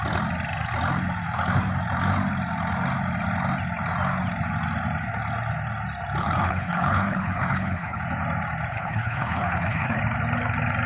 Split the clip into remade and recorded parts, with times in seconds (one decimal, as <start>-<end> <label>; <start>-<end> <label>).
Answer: 0.0-6.2 recorded; 6.2-8.0 remade; 8.0-8.7 recorded; 8.7-10.0 remade; 10.0-10.9 recorded